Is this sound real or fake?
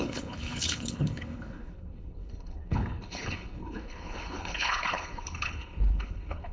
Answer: fake